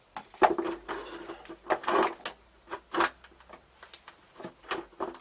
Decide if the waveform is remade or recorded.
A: recorded